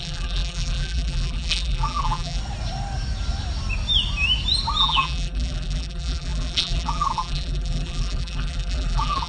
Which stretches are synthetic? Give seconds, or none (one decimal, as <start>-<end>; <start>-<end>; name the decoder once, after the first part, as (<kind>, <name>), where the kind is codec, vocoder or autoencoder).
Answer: 0.0-2.4 (vocoder, BigVGAN v2); 4.8-9.3

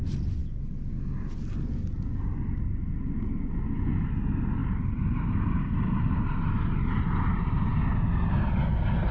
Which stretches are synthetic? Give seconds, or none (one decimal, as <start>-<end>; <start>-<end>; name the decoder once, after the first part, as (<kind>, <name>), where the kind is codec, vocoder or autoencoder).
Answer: 4.6-6.2 (vocoder, BigVGAN v2)

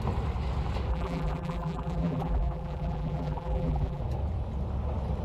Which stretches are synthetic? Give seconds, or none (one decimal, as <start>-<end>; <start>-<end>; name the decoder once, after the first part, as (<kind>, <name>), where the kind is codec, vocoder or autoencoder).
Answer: 0.9-4.0 (vocoder, BigVGAN v2)

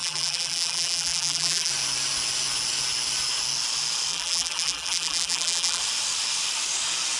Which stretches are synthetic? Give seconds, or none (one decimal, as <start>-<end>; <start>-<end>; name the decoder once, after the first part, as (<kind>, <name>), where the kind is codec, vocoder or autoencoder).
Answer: 0.0-1.7 (vocoder, BigVGAN v2); 4.1-5.8

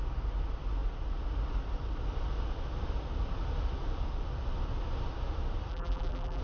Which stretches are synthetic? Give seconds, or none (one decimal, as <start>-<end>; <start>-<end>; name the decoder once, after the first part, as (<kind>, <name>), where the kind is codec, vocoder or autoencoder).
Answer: 5.7-6.4 (vocoder, BigVGAN v2)

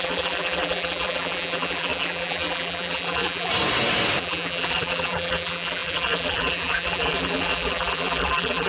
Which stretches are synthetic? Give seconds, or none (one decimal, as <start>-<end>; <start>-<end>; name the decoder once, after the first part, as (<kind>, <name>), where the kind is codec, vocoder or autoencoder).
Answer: 0.0-3.5 (vocoder, BigVGAN v2); 4.2-8.7